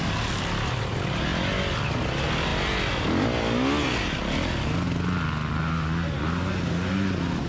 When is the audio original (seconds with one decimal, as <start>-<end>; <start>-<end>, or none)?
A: 0.0-7.5